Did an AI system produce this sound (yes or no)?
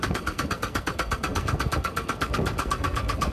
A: yes